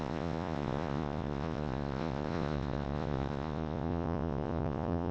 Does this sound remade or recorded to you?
remade